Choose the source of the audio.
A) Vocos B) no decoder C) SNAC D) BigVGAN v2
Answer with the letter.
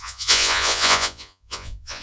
A